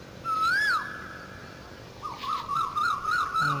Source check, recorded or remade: recorded